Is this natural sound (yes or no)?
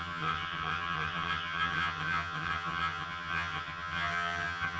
no